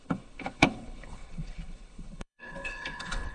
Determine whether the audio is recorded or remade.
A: remade